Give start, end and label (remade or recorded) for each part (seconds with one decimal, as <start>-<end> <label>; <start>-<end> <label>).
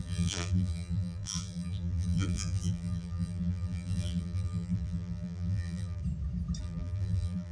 0.0-6.0 remade; 6.0-6.6 recorded; 6.6-7.5 remade